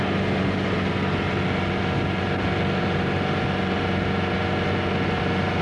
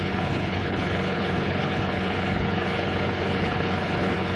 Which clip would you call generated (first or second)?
second